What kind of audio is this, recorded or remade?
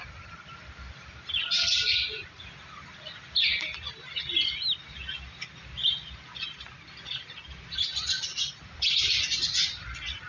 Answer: recorded